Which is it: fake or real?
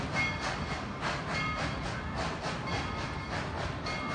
real